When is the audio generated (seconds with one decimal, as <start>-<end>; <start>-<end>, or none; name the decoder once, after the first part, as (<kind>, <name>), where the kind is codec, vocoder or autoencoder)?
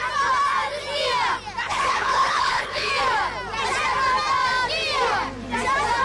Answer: 1.6-2.9 (codec, HILCodec)